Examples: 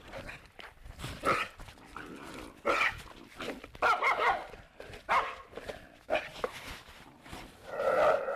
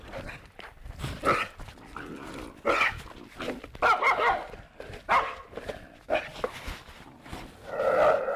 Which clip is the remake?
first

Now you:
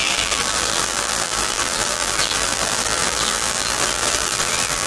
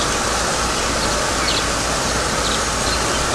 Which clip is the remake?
first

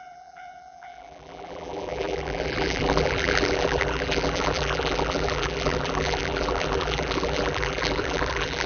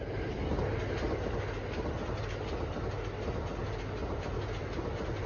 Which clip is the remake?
first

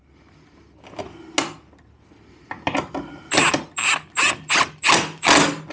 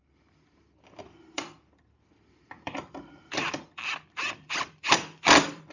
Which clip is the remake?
second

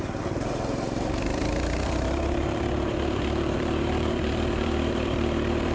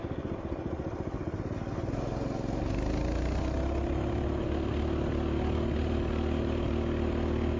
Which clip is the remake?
first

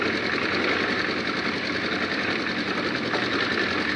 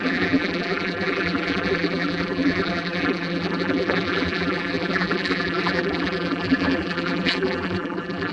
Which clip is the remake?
second